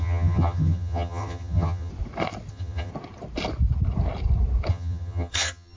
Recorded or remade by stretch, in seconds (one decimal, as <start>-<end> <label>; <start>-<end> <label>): 0.0-1.9 remade; 1.9-2.5 recorded; 2.5-2.9 remade; 2.9-4.7 recorded; 4.7-5.8 remade